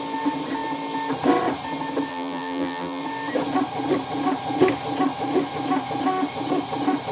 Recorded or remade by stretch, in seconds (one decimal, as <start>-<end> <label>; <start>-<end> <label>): 0.0-2.1 recorded; 2.1-3.0 remade; 3.0-7.1 recorded